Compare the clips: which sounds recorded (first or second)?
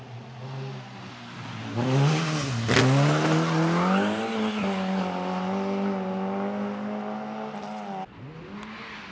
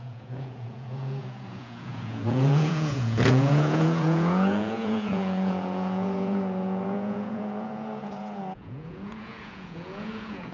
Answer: first